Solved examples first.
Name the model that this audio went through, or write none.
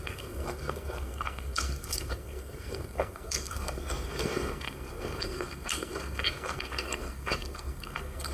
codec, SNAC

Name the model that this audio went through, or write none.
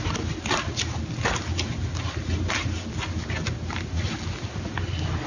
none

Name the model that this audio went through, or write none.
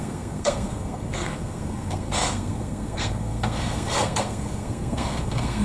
codec, SNAC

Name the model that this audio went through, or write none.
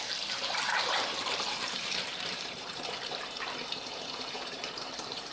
vocoder, BigVGAN v2